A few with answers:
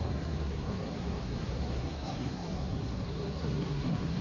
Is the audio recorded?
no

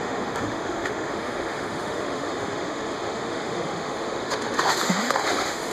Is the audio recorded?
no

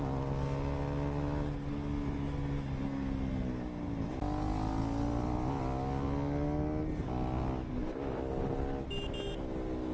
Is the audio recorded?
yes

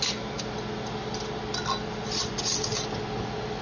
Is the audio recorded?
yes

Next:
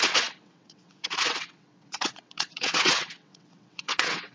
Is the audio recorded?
no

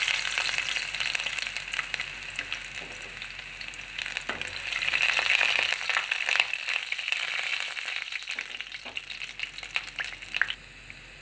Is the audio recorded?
yes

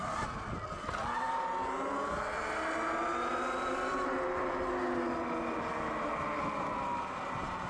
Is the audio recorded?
yes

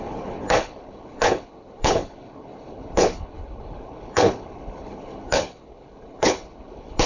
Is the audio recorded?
no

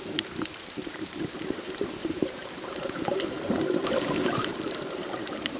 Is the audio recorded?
no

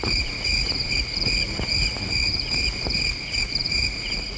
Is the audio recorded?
no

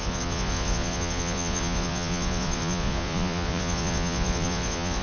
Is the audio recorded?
no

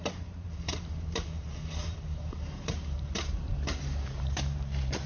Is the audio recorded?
no